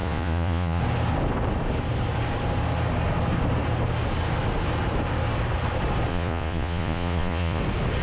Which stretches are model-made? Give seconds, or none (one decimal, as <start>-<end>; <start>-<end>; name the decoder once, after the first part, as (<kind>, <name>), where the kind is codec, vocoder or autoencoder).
0.0-0.8 (vocoder, Vocos); 6.1-7.6